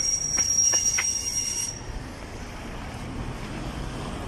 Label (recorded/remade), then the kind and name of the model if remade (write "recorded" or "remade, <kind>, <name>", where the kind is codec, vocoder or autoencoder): recorded